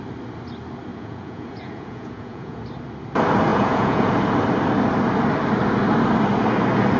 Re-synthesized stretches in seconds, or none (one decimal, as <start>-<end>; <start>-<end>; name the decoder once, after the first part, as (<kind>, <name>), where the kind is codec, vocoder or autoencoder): 0.9-2.6 (vocoder, Vocos); 3.5-4.1